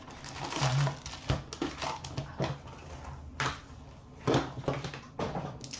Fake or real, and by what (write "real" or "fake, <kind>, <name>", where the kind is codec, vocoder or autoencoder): real